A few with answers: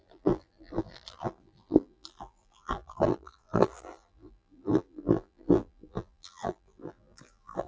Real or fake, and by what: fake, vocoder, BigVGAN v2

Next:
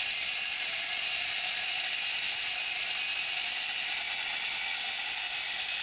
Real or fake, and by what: real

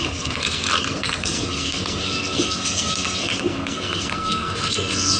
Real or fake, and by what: fake, codec, SNAC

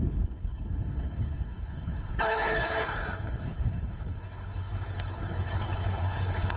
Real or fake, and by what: fake, codec, HILCodec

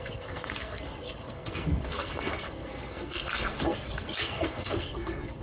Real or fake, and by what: fake, codec, SNAC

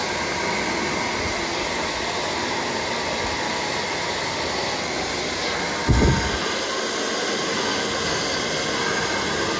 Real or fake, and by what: real